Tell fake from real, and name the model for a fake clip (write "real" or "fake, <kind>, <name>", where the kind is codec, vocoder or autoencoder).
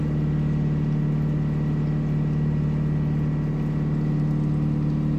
real